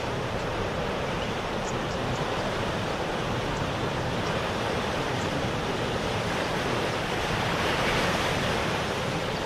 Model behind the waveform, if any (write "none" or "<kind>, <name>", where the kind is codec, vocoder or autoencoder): vocoder, BigVGAN v2